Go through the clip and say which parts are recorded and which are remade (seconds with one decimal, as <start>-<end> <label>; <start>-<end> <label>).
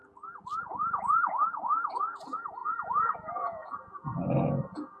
0.0-0.6 recorded; 0.6-5.0 remade